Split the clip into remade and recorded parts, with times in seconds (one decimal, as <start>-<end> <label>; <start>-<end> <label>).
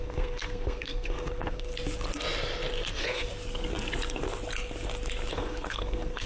0.0-1.7 remade; 1.7-2.9 recorded; 2.9-3.3 remade; 3.3-5.3 recorded; 5.3-6.3 remade